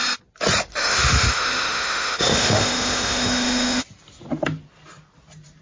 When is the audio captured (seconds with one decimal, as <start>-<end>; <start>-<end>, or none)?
0.0-0.7; 3.8-5.6